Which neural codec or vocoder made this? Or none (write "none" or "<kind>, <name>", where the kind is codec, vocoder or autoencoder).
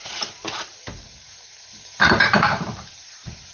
vocoder, BigVGAN v2